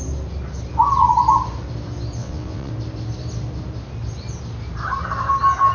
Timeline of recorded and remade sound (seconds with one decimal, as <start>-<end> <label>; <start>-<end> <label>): 0.0-2.2 recorded; 2.2-2.7 remade; 2.7-5.7 recorded

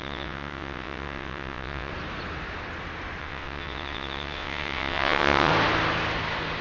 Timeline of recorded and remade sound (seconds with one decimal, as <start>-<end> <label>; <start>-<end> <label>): 0.0-1.9 remade; 1.9-3.2 recorded; 3.2-5.5 remade; 5.5-6.6 recorded

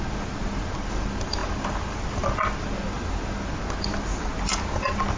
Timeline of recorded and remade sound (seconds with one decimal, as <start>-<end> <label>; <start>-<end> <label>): 0.0-5.2 recorded

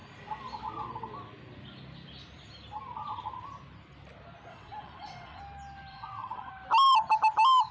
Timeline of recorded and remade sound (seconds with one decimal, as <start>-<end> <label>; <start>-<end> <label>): 0.0-4.5 recorded; 4.5-5.4 remade; 5.4-5.9 recorded; 5.9-6.5 remade; 6.5-7.7 recorded